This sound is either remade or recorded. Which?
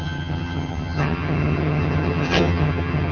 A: remade